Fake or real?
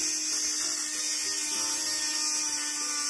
real